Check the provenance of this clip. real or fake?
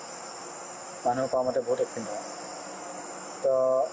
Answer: real